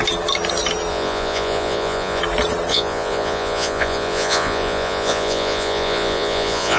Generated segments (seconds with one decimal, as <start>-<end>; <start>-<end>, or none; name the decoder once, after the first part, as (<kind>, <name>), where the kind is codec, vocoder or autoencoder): 0.9-2.2 (vocoder, Vocos); 2.7-6.8